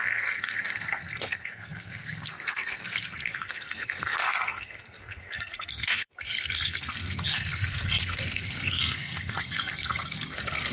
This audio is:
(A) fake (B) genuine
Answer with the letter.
A